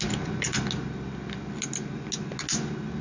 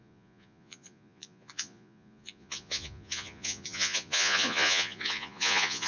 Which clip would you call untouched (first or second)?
first